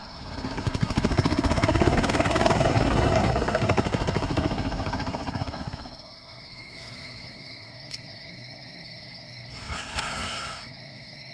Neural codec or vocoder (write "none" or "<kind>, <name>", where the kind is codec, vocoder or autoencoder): codec, SNAC